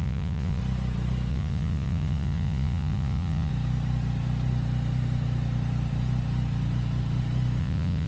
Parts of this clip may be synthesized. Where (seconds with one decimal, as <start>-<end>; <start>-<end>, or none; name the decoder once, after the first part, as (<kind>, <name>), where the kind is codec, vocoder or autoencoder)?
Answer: 0.0-0.6 (vocoder, Vocos); 1.3-3.5; 7.6-8.1